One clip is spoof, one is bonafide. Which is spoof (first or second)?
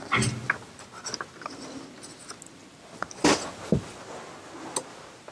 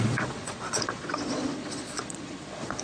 second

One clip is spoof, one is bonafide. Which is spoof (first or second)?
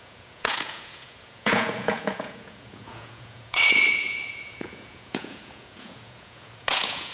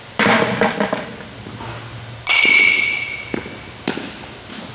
first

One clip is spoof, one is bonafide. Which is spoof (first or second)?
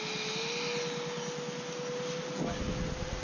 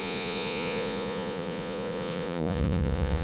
second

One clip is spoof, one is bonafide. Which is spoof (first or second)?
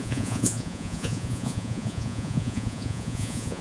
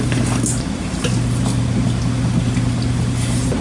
first